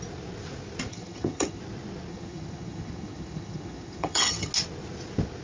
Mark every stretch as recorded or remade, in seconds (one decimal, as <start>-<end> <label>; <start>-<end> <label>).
0.0-0.9 recorded; 0.9-1.6 remade; 1.6-2.1 recorded; 2.1-4.5 remade; 4.5-5.4 recorded

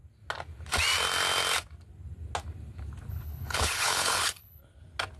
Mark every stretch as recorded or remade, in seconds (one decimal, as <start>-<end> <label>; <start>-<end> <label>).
0.0-3.1 recorded; 3.1-4.6 remade; 4.6-5.2 recorded

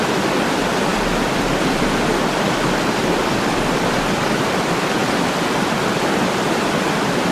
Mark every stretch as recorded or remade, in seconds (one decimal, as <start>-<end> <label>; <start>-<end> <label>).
0.0-7.3 recorded

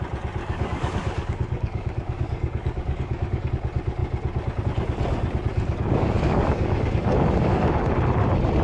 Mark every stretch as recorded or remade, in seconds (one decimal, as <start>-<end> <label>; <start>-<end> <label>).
0.0-0.4 recorded; 0.4-3.5 remade; 3.5-5.5 recorded; 5.5-7.9 remade; 7.9-8.6 recorded

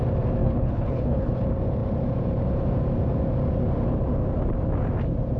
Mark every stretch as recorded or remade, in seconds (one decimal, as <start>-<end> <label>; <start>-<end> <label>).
0.0-0.4 recorded; 0.4-1.3 remade; 1.3-5.4 recorded

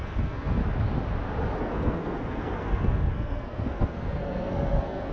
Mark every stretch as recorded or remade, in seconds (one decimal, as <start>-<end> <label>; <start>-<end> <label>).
0.0-0.6 remade; 0.6-1.6 recorded; 1.6-5.1 remade